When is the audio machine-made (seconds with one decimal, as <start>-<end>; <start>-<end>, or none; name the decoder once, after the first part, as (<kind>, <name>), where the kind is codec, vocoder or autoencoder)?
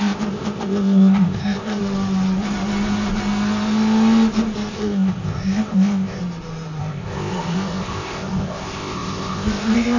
0.0-1.8 (codec, ZipCodec); 4.7-6.2; 6.8-10.0